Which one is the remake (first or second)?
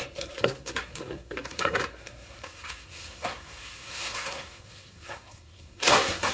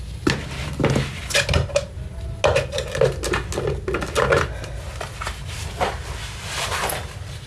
first